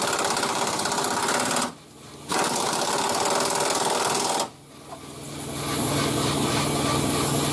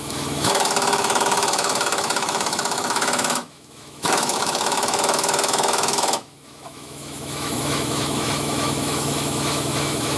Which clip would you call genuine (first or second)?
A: first